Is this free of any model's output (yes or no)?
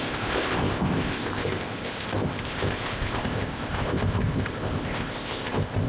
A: no